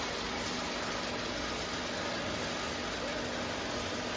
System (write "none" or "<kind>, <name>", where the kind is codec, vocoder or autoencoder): none